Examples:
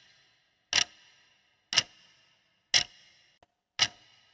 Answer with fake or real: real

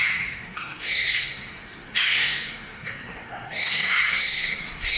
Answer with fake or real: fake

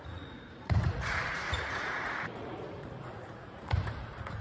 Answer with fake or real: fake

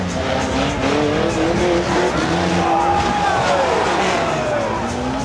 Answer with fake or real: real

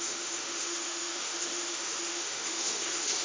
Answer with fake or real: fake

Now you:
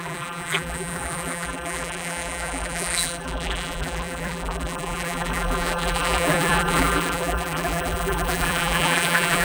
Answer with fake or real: fake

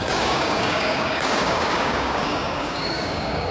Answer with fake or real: fake